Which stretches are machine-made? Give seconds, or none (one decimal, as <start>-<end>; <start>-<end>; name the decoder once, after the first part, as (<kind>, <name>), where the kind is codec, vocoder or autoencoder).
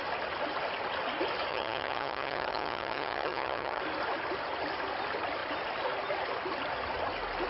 1.5-3.8 (vocoder, HiFi-GAN)